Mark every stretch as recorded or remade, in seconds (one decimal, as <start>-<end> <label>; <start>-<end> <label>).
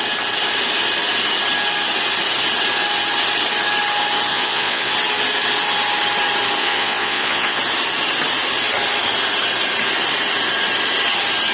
0.0-4.3 recorded; 4.3-4.9 remade; 4.9-6.6 recorded; 6.6-7.6 remade; 7.6-11.5 recorded